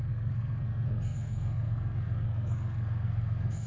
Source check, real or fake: fake